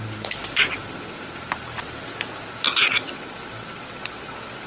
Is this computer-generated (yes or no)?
no